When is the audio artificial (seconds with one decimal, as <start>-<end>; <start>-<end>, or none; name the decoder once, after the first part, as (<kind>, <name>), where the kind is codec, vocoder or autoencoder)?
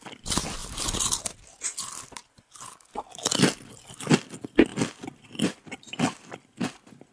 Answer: 0.6-1.2 (vocoder, BigVGAN v2); 4.7-7.1